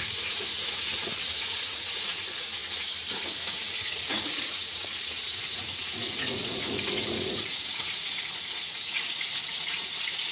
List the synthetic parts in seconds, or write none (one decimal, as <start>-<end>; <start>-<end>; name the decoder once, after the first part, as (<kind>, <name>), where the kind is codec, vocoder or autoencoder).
0.0-2.6 (vocoder, Vocos); 3.3-10.3